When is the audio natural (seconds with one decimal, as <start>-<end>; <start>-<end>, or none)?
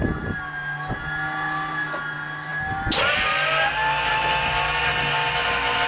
0.0-5.9